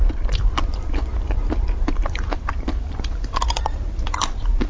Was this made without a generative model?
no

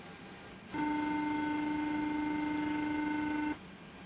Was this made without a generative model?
yes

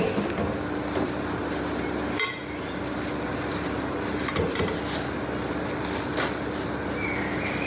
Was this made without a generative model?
yes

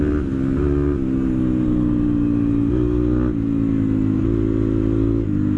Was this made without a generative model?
yes